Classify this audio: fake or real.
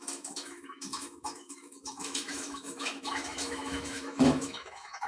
fake